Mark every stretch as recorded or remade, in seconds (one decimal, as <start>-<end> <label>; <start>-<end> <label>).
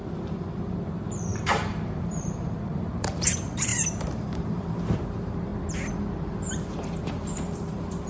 0.0-5.5 remade; 5.5-6.3 recorded; 6.3-8.1 remade